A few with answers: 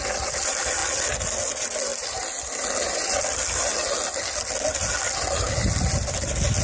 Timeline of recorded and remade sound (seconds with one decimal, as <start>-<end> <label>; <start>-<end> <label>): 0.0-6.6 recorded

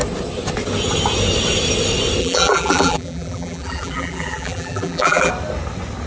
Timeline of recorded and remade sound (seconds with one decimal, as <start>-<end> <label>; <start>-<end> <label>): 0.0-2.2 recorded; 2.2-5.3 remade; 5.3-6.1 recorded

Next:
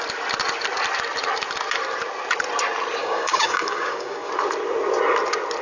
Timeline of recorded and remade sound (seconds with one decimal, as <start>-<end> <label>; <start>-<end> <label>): 0.0-3.0 recorded; 3.0-4.3 remade; 4.3-5.6 recorded

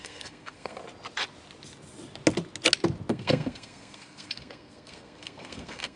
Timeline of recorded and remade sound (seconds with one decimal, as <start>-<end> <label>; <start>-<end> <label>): 0.0-0.8 remade; 0.8-3.1 recorded; 3.1-6.0 remade

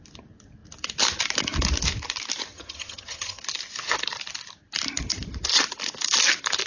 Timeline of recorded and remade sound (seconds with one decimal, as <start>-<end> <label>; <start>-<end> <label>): 0.0-2.5 recorded; 2.5-3.4 remade; 3.4-6.7 recorded